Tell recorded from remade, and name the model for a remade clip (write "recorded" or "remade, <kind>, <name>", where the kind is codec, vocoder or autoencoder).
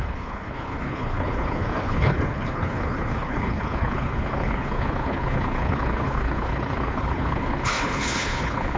remade, codec, HILCodec